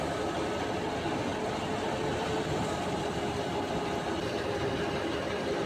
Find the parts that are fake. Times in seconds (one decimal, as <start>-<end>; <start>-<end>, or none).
none